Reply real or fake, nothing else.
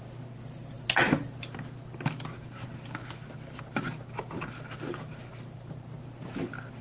real